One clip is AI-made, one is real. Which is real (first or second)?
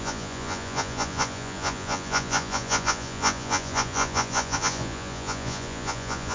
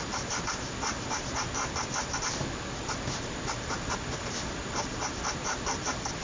second